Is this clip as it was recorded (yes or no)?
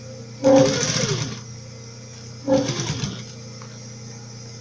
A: yes